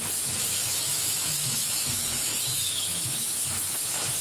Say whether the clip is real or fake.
fake